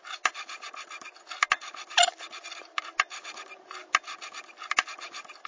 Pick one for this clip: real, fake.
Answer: real